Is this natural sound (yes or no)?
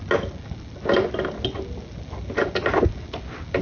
yes